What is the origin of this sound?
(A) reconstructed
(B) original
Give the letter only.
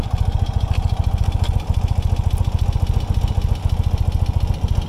B